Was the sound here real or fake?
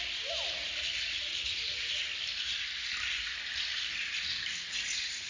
real